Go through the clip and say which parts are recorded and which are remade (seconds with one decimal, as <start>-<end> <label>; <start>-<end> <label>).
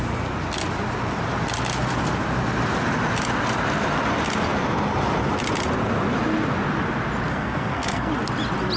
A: 0.0-7.3 recorded; 7.3-8.1 remade; 8.1-8.8 recorded